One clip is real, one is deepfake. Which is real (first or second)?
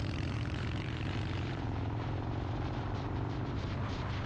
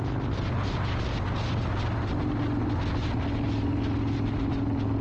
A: second